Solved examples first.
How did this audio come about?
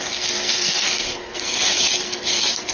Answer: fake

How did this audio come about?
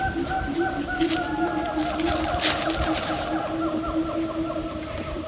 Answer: real